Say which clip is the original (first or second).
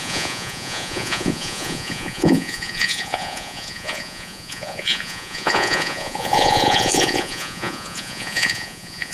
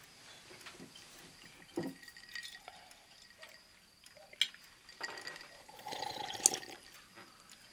second